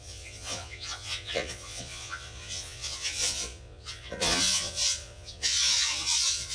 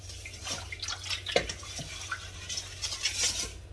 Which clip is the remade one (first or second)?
first